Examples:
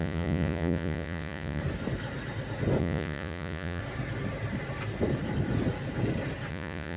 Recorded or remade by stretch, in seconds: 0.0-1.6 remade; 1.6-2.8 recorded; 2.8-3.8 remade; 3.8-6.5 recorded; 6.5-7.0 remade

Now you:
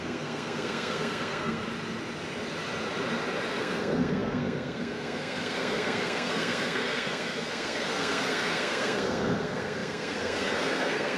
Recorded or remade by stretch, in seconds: 0.0-1.6 remade; 1.6-3.6 recorded; 3.6-11.2 remade

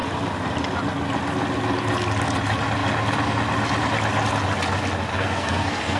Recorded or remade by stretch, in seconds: 0.0-5.1 recorded; 5.1-6.0 remade

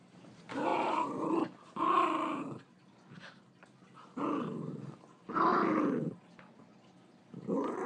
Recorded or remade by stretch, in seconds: 0.0-7.9 recorded

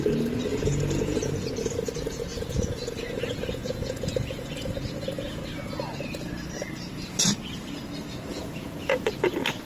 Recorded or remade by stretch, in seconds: 0.0-0.5 recorded; 0.5-1.5 remade; 1.5-2.3 recorded; 2.3-4.8 remade; 4.8-8.3 recorded; 8.3-9.2 remade; 9.2-9.7 recorded

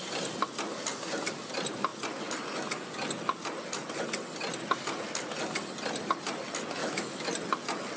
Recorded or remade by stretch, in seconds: 0.0-6.8 recorded; 6.8-7.3 remade; 7.3-8.0 recorded